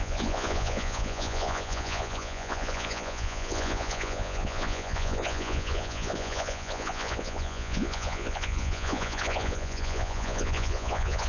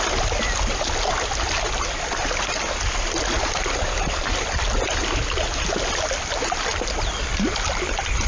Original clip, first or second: second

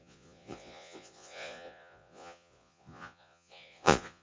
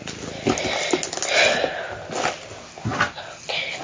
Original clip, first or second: second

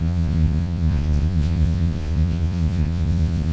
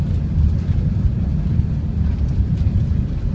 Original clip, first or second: second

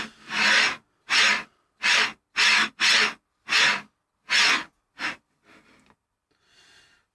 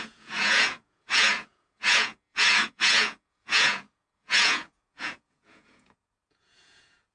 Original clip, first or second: first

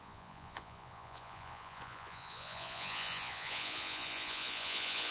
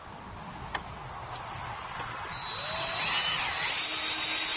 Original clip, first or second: second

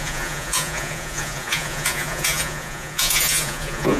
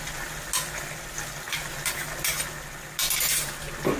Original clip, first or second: second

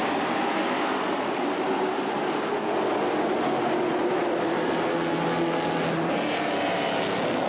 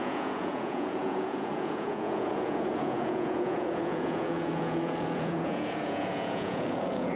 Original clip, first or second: first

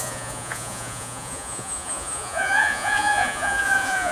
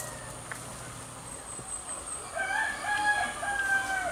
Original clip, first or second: second